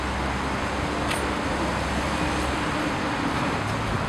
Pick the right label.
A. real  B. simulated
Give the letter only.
A